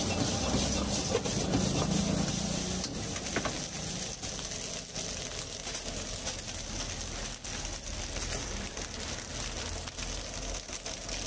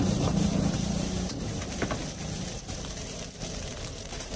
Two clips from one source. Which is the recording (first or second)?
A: first